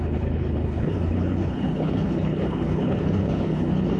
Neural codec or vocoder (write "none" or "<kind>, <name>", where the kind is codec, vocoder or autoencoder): codec, HILCodec